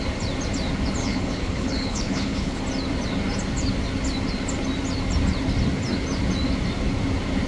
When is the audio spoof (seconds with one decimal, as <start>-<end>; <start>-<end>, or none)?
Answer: 1.0-2.6